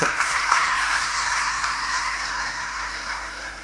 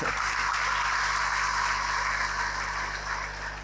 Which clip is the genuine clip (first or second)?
second